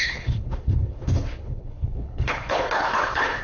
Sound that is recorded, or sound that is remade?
remade